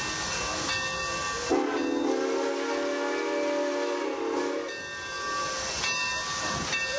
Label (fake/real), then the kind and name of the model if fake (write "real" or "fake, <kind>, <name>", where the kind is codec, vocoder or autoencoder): real